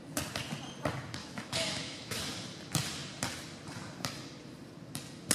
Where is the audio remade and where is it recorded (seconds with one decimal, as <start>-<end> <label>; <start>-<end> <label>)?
0.0-1.2 recorded; 1.2-2.2 remade; 2.2-5.3 recorded

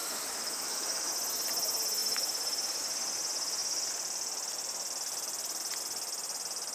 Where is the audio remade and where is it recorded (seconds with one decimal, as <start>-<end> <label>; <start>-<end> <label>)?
0.0-1.1 remade; 1.1-6.7 recorded

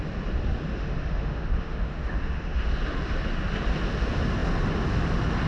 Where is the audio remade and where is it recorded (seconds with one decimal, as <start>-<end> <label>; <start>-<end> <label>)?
0.0-0.7 recorded; 0.7-2.7 remade; 2.7-5.5 recorded